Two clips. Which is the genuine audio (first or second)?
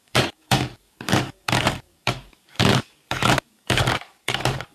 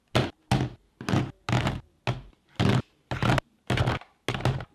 second